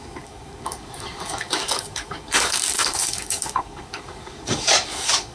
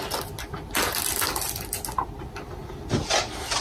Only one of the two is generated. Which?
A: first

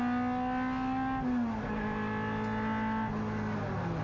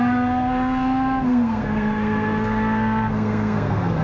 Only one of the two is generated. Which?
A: second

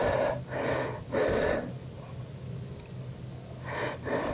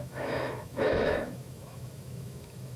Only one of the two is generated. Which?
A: second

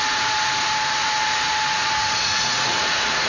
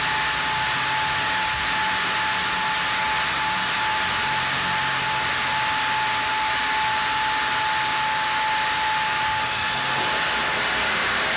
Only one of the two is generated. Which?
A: first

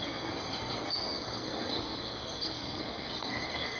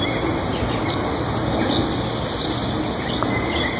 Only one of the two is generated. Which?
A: first